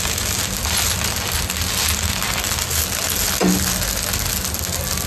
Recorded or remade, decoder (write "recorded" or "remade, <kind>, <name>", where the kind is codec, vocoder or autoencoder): recorded